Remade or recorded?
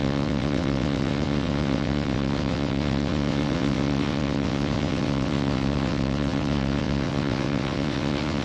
remade